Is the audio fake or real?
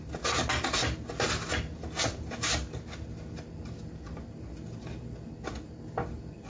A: real